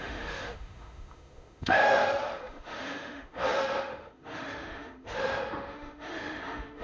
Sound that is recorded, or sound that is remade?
remade